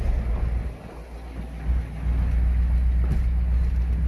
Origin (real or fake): real